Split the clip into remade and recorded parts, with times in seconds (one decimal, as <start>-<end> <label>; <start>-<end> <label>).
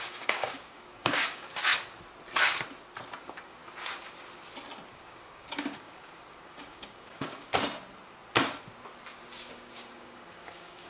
0.0-1.7 remade; 1.7-3.2 recorded; 3.2-3.6 remade; 3.6-4.9 recorded; 4.9-7.5 remade; 7.5-9.5 recorded; 9.5-10.9 remade